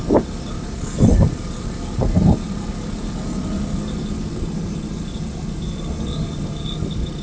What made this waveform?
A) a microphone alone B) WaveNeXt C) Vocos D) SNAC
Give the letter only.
A